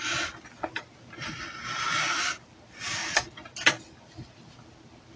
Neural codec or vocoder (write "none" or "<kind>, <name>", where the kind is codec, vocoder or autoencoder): none